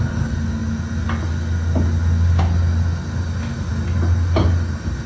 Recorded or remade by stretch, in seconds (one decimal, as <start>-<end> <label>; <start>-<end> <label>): 0.0-5.1 recorded